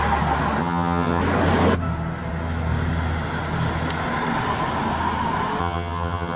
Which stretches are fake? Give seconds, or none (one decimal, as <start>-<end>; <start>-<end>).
0.6-1.2; 5.6-6.4